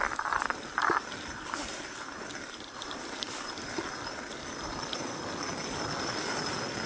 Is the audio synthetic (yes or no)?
no